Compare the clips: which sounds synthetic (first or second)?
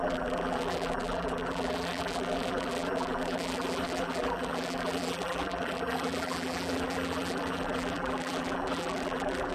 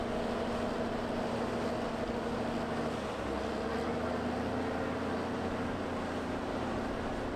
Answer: first